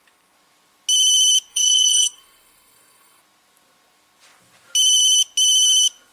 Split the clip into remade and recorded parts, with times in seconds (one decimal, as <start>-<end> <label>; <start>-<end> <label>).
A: 0.0-1.5 recorded; 1.5-3.2 remade; 3.2-6.1 recorded